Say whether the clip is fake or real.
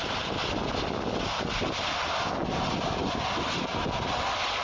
real